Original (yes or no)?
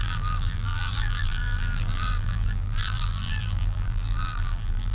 no